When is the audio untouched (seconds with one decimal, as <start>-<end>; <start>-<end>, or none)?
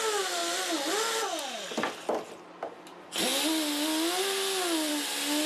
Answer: 0.0-5.5